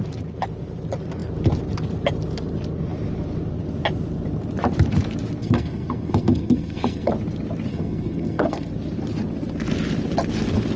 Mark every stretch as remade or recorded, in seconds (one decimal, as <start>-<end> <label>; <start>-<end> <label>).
0.0-5.4 recorded; 5.4-7.1 remade; 7.1-7.7 recorded; 7.7-8.7 remade; 8.7-10.8 recorded

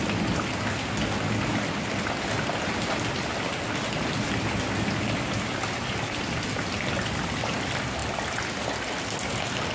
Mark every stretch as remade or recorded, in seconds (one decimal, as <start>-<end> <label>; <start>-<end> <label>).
0.0-9.7 recorded